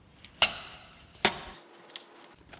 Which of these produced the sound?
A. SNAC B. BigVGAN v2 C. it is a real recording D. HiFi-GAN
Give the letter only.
C